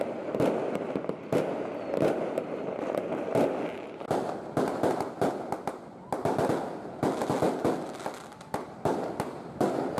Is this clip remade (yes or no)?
no